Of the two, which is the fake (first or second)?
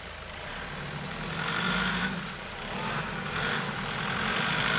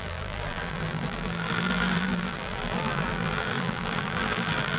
second